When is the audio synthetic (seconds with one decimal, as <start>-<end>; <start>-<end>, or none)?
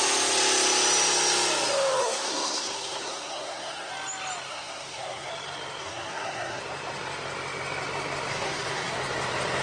2.0-3.9; 4.5-5.3; 5.8-6.6; 8.3-8.9